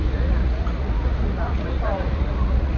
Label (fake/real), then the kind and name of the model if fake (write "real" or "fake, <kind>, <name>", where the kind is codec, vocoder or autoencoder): fake, vocoder, Vocos